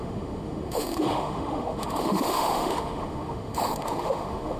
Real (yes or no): no